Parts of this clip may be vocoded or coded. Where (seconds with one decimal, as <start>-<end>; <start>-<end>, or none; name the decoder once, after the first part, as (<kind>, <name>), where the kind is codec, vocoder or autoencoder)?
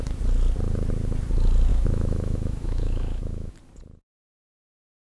1.7-3.5 (autoencoder, DAC-VAE)